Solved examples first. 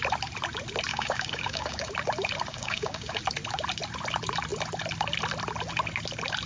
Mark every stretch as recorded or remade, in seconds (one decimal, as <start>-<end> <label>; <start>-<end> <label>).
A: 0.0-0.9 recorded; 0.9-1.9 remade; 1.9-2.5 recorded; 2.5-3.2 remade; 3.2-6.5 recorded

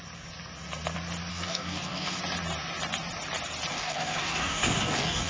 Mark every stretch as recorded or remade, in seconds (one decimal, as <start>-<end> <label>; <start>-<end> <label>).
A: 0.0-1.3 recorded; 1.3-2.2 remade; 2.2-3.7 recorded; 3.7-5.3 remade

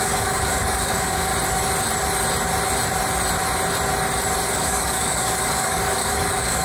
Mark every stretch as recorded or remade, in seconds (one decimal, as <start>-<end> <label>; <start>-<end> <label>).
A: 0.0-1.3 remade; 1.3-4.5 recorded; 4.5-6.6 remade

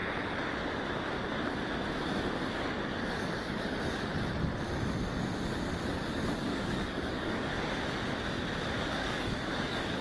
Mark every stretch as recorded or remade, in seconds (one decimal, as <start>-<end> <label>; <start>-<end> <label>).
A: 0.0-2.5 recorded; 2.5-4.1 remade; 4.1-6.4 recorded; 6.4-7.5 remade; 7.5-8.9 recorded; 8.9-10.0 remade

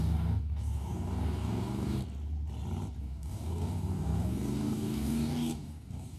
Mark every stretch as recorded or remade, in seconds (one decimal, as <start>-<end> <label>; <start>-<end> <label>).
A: 0.0-2.0 remade; 2.0-3.0 recorded; 3.0-6.2 remade